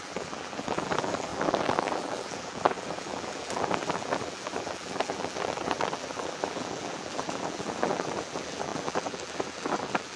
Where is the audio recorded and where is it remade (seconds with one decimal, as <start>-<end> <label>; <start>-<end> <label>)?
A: 0.0-10.2 remade